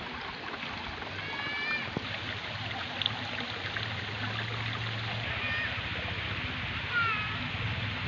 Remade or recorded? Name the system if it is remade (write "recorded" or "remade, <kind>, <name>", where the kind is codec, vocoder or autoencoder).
recorded